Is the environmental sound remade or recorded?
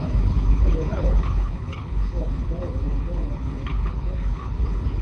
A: remade